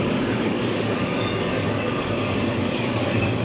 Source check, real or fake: fake